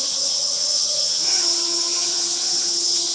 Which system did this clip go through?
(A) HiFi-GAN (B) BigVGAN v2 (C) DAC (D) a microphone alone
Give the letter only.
A